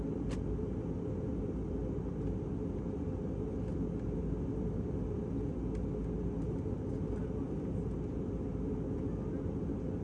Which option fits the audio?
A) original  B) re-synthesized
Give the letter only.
A